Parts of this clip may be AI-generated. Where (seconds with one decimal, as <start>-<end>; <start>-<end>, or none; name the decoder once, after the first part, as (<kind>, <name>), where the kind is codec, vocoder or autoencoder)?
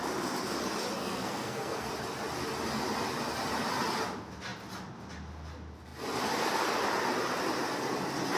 1.0-1.9 (codec, SNAC)